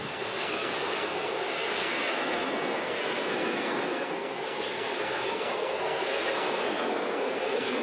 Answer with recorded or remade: remade